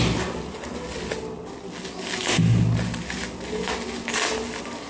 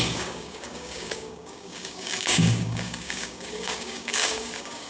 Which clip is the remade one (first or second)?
second